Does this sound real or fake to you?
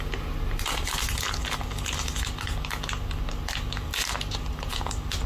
real